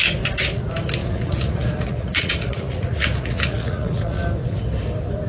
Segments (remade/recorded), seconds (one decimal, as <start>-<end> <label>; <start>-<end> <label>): 0.0-1.0 recorded; 1.0-4.2 remade; 4.2-5.3 recorded